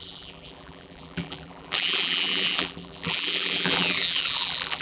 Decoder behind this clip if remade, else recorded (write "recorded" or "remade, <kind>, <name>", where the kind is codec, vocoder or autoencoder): remade, vocoder, BigVGAN v2